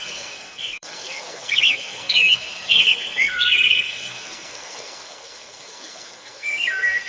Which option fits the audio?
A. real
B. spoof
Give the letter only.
B